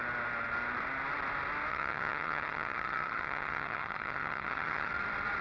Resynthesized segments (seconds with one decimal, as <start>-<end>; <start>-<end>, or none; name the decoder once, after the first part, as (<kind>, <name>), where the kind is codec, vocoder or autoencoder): 1.7-4.9 (vocoder, HiFi-GAN)